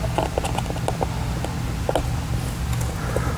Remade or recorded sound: recorded